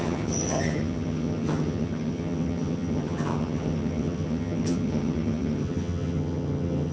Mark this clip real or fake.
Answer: fake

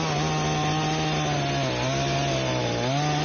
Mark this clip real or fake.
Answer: real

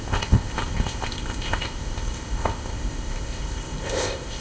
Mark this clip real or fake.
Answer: fake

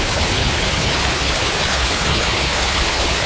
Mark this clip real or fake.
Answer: fake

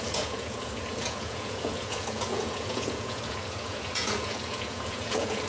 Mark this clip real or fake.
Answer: fake